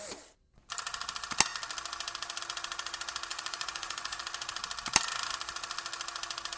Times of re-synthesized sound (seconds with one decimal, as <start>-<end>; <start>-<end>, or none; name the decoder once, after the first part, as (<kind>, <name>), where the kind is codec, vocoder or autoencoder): 3.3-4.2 (vocoder, Vocos)